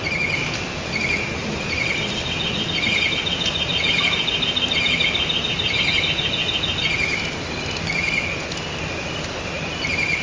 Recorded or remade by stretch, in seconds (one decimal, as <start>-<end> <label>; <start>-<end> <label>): 0.0-1.4 recorded; 1.4-2.1 remade; 2.1-10.2 recorded